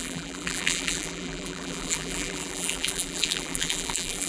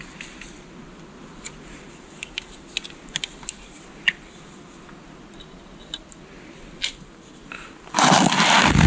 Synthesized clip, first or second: first